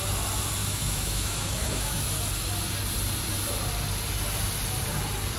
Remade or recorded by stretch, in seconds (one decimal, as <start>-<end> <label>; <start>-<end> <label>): 0.0-0.6 recorded; 0.6-2.0 remade; 2.0-5.4 recorded